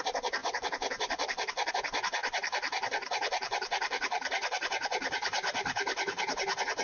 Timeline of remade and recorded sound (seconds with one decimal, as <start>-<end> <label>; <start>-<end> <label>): 0.0-0.4 recorded; 0.4-1.7 remade; 1.7-2.2 recorded; 2.2-6.3 remade; 6.3-6.8 recorded

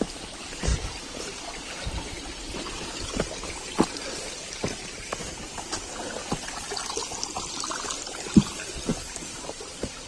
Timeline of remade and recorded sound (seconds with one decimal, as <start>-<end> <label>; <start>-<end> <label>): 0.0-8.9 recorded; 8.9-10.1 remade

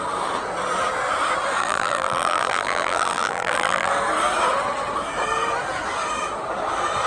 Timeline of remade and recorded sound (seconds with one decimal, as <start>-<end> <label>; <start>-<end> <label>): 0.0-1.6 recorded; 1.6-3.9 remade; 3.9-7.1 recorded

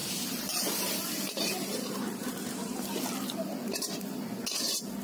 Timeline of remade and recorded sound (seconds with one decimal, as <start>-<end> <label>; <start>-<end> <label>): 0.0-3.0 remade; 3.0-5.0 recorded

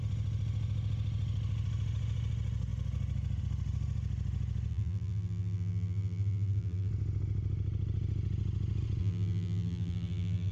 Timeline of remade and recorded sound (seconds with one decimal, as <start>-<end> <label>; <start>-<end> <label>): 0.0-4.7 recorded; 4.7-6.9 remade; 6.9-9.0 recorded; 9.0-10.5 remade